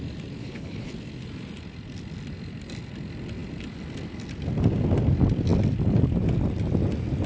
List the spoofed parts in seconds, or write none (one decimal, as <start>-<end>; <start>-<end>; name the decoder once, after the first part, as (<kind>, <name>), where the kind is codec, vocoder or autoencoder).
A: 0.4-0.9 (codec, HILCodec)